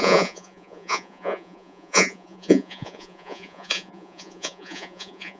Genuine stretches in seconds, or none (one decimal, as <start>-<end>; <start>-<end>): none